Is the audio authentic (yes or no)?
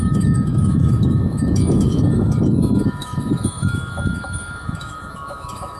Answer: no